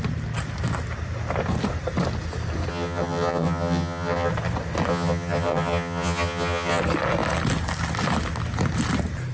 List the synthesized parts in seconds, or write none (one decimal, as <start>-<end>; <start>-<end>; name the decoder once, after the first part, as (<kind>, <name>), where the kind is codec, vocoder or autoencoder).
2.7-4.3 (vocoder, HiFi-GAN); 4.9-6.8